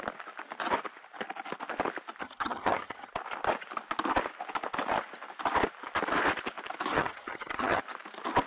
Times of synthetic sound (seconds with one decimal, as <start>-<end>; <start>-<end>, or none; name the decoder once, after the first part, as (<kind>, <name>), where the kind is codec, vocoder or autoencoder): 2.2-3.1 (vocoder, HiFi-GAN); 6.9-7.8